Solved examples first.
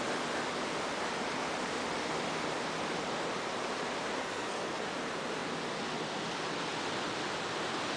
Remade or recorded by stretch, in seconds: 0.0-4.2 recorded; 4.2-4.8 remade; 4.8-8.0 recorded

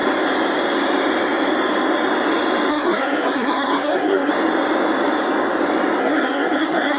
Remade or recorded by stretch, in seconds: 0.0-2.7 recorded; 2.7-4.3 remade; 4.3-6.0 recorded; 6.0-7.0 remade